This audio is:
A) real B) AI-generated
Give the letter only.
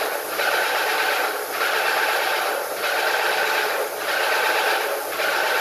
A